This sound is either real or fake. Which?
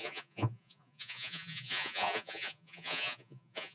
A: fake